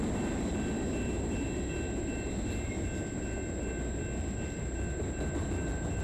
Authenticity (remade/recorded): recorded